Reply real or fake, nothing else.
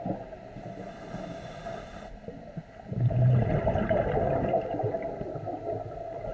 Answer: real